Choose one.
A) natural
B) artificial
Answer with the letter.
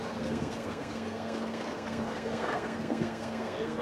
B